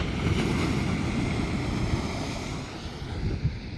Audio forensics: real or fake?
real